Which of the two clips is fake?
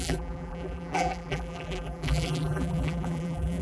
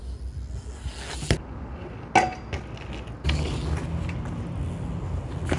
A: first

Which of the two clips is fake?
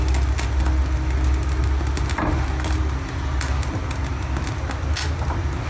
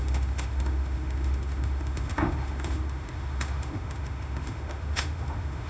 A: second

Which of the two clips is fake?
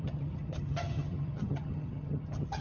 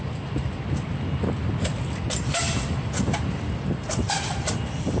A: first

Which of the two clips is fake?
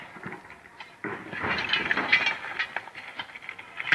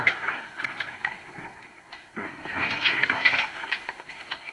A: second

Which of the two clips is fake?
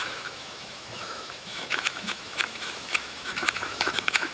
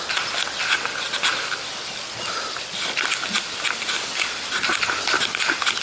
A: first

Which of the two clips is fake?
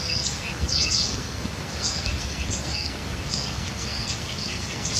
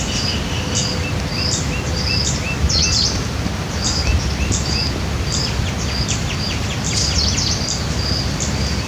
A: first